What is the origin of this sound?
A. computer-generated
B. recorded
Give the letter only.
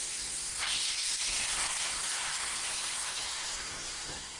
A